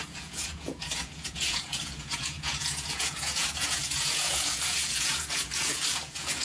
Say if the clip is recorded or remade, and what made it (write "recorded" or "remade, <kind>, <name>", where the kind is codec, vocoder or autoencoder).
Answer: remade, vocoder, Vocos